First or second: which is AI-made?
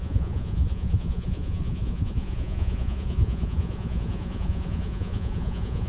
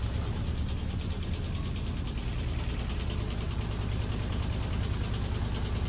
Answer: first